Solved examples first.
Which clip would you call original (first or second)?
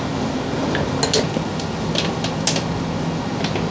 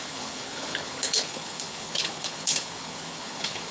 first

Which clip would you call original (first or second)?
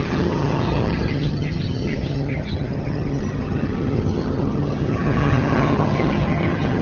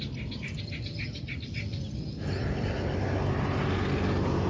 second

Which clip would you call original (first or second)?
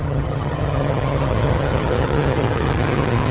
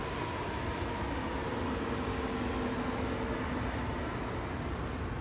second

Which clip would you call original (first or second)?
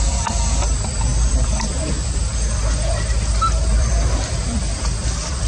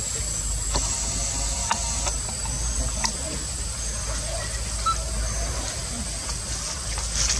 second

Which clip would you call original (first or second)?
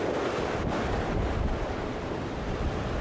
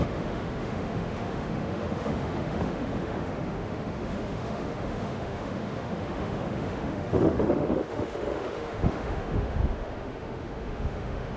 first